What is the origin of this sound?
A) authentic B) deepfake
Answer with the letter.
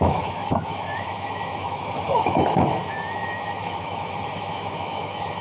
B